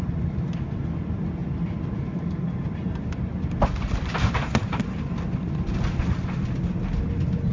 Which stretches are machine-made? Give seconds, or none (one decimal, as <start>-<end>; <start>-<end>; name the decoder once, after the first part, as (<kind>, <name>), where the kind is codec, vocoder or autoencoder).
none